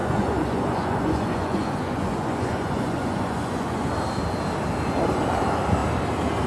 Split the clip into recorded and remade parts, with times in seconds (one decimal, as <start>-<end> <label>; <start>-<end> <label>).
0.0-3.9 remade; 3.9-6.5 recorded

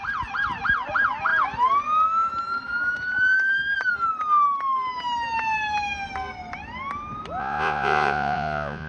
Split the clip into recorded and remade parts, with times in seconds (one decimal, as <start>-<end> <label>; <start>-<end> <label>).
0.0-7.4 recorded; 7.4-8.9 remade

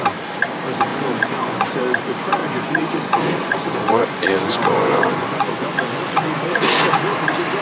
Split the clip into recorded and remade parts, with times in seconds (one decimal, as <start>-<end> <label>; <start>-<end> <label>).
0.0-0.9 recorded; 0.9-1.8 remade; 1.8-2.4 recorded; 2.4-7.0 remade; 7.0-7.6 recorded

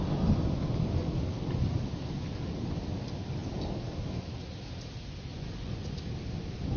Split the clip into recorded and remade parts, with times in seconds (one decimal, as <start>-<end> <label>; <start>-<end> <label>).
0.0-5.3 recorded; 5.3-6.0 remade; 6.0-6.8 recorded

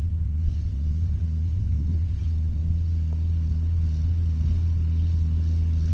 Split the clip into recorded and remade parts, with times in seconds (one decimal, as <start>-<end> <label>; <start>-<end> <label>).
0.0-2.6 remade; 2.6-5.9 recorded

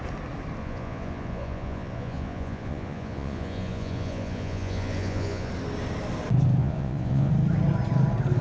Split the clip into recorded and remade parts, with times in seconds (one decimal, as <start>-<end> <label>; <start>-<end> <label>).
0.0-0.6 recorded; 0.6-5.5 remade; 5.5-6.6 recorded; 6.6-7.3 remade; 7.3-8.4 recorded

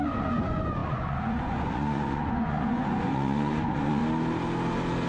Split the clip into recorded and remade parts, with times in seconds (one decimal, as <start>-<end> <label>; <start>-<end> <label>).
0.0-4.0 remade; 4.0-5.1 recorded

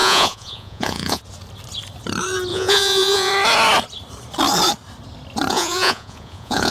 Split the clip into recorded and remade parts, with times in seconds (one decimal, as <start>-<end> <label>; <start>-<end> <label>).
0.0-1.2 remade; 1.2-2.5 recorded; 2.5-3.3 remade; 3.3-5.5 recorded; 5.5-6.7 remade